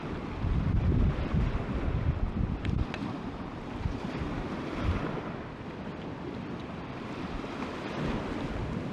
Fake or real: fake